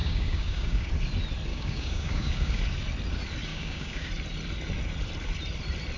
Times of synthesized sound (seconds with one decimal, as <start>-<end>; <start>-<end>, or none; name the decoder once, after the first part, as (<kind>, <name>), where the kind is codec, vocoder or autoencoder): 0.0-0.9 (codec, DAC); 1.5-2.6; 3.5-4.1